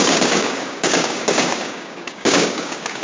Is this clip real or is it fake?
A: fake